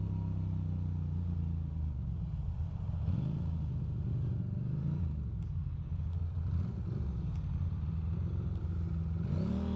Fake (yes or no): no